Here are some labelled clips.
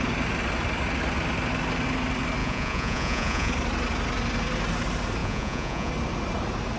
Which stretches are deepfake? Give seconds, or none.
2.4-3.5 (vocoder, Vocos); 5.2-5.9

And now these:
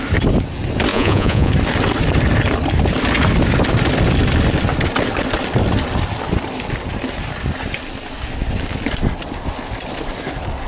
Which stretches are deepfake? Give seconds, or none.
0.9-1.5 (vocoder, Vocos)

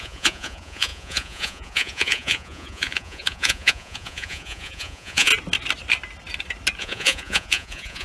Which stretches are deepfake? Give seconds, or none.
0.0-5.3 (vocoder, Vocos); 6.8-8.0

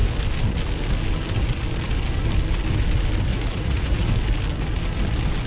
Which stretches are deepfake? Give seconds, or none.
3.3-4.1 (vocoder, Vocos)

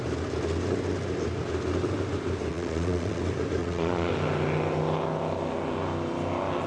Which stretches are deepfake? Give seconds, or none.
2.5-3.2 (vocoder, Vocos); 3.6-4.1